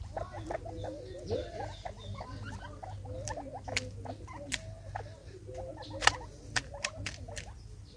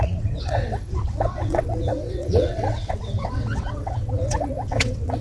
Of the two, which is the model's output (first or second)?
second